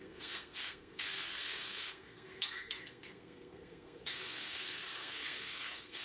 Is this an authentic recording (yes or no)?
no